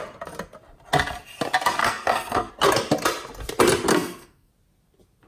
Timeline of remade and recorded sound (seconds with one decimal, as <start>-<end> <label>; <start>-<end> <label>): 0.0-1.8 recorded; 1.8-2.5 remade; 2.5-3.9 recorded; 3.9-4.5 remade; 4.5-5.3 recorded